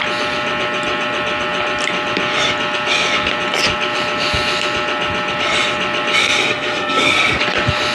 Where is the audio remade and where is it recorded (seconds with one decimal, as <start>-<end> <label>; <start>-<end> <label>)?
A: 0.0-6.2 recorded; 6.2-7.4 remade; 7.4-7.9 recorded